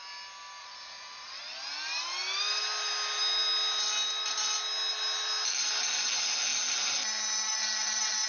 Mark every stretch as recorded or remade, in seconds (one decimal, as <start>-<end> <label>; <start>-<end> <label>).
0.0-0.6 recorded; 0.6-1.4 remade; 1.4-8.3 recorded